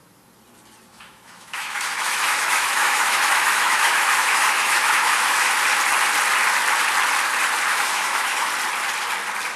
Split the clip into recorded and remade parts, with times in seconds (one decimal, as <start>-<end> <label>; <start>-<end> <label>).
0.0-0.9 recorded; 0.9-5.5 remade; 5.5-7.7 recorded; 7.7-8.5 remade; 8.5-9.6 recorded